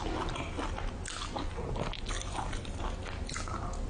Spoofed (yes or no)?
no